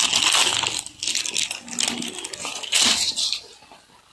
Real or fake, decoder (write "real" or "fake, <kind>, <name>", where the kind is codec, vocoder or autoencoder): real